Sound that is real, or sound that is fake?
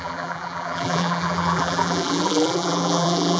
fake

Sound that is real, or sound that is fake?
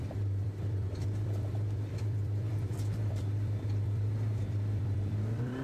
fake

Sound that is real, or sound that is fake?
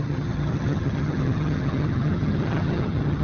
fake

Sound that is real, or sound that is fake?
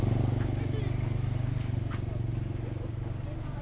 real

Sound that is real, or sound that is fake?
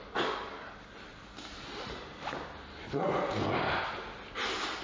real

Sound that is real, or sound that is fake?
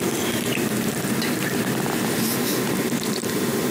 real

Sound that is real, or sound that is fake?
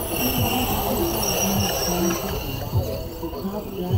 real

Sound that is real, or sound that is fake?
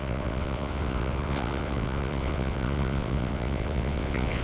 fake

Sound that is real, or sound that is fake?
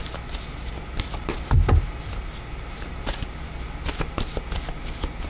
real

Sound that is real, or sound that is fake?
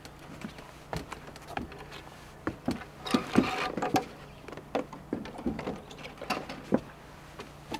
real